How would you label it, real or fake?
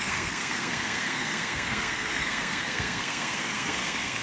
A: fake